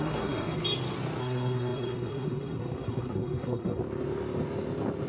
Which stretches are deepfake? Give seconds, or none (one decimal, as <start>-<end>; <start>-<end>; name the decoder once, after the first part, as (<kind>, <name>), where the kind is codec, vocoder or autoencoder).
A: 0.0-0.6 (codec, SNAC); 1.2-3.8